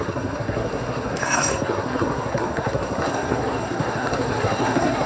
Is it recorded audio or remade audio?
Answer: remade